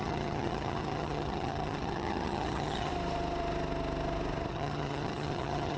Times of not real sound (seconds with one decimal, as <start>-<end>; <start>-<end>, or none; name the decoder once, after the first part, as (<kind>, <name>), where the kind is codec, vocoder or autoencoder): 0.0-2.9 (vocoder, HiFi-GAN); 4.5-5.8